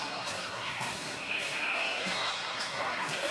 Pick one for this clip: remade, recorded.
remade